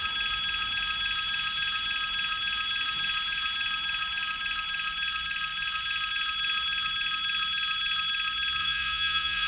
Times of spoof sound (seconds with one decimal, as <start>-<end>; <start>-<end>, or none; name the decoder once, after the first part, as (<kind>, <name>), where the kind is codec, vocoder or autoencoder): 8.6-9.5 (vocoder, Vocos)